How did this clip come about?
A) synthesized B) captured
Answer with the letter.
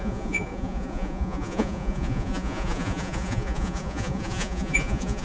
A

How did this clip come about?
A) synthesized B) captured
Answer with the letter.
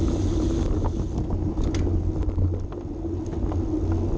B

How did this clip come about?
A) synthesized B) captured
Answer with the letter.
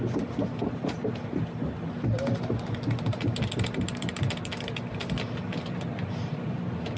B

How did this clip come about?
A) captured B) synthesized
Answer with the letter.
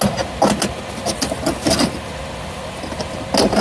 A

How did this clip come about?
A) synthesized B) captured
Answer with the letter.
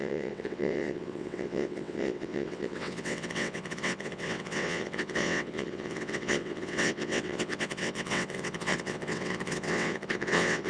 A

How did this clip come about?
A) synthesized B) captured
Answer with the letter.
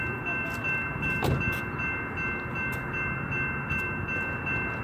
B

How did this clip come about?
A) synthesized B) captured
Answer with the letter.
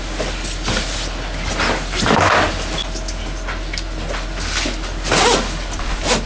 B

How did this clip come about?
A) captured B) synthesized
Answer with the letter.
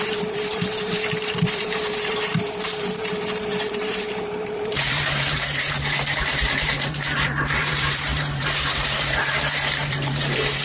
B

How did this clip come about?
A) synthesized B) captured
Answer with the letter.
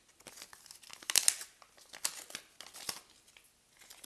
B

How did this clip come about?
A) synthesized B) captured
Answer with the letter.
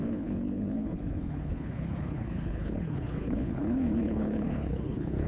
A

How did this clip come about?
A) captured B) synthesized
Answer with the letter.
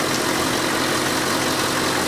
A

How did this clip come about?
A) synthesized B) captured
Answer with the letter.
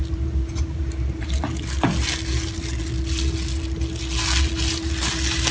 B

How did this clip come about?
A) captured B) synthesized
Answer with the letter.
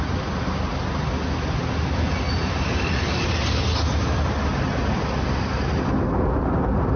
A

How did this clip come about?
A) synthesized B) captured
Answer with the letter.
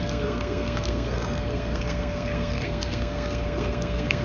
A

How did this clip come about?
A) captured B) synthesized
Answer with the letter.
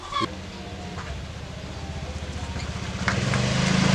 A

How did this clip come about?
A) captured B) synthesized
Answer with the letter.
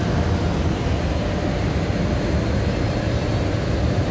A